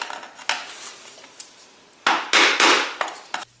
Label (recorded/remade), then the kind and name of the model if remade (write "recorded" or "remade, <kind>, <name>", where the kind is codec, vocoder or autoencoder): recorded